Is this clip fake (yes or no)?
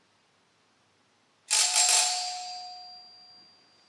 no